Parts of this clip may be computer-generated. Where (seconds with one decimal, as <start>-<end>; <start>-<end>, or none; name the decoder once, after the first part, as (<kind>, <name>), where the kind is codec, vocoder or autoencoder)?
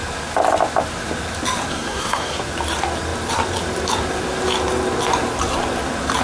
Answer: 1.7-2.4 (codec, SNAC)